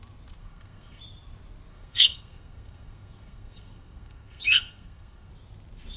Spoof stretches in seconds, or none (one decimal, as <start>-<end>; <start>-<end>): 0.4-1.0; 1.7-5.3